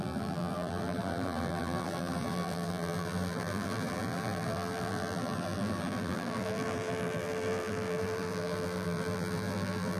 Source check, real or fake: fake